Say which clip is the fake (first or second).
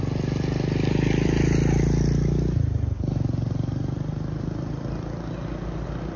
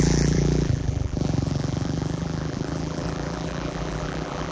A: second